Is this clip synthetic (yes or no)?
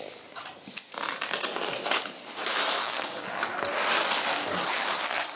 no